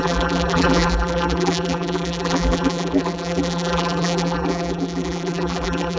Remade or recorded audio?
remade